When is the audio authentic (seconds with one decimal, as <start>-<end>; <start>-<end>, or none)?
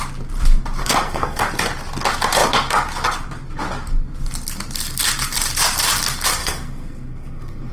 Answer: 0.0-0.8; 1.4-6.4